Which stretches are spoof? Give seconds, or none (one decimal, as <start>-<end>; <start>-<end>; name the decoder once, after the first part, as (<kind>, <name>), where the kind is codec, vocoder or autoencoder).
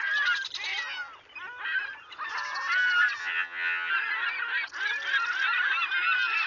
3.2-3.9 (vocoder, HiFi-GAN)